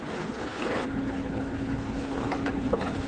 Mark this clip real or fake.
fake